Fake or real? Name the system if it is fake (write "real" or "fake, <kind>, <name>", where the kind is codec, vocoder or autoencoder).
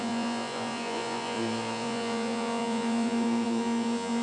fake, vocoder, Vocos